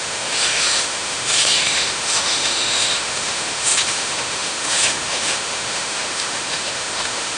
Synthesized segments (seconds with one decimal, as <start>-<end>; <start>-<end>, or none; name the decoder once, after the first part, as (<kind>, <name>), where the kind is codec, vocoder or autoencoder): 0.0-7.4 (autoencoder, DAC-VAE)